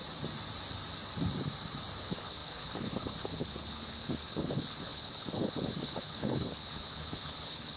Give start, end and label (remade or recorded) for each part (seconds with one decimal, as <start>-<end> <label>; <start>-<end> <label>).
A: 0.0-2.0 recorded; 2.0-7.8 remade